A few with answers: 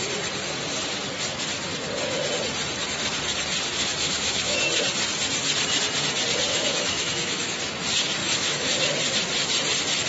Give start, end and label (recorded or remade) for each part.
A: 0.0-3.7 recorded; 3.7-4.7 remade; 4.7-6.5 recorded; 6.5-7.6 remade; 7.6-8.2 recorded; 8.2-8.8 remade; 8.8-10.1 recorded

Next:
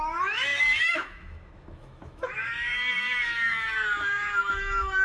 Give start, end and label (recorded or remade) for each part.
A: 0.0-5.0 remade

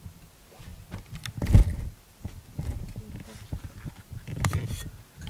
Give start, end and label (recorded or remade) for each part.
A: 0.0-5.3 recorded